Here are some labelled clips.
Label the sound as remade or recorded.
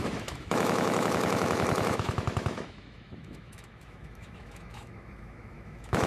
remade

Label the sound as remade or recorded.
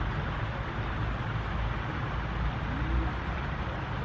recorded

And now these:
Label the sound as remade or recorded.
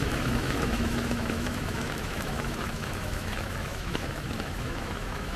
remade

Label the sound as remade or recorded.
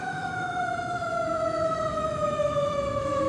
remade